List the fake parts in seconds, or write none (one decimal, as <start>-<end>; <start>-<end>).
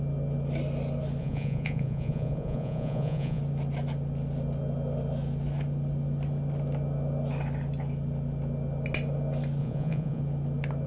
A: 1.2-3.4; 9.6-10.2